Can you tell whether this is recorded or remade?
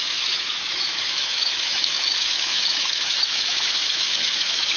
remade